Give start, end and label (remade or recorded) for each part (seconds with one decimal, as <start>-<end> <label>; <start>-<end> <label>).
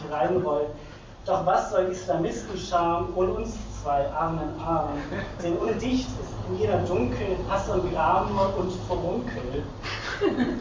0.0-3.6 recorded; 3.6-4.1 remade; 4.1-4.9 recorded; 4.9-5.8 remade; 5.8-10.6 recorded